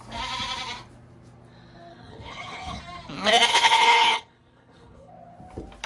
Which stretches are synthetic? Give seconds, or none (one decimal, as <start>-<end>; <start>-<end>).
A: 1.9-2.8; 3.5-5.1